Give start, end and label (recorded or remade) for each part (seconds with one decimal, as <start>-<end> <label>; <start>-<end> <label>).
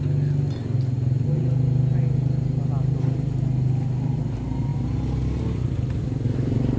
0.0-6.8 recorded